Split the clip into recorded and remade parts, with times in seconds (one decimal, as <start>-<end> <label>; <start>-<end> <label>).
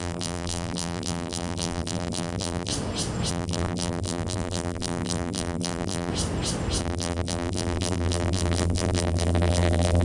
0.0-2.7 remade; 2.7-3.3 recorded; 3.3-6.1 remade; 6.1-6.8 recorded; 6.8-10.0 remade